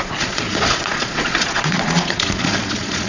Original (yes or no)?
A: no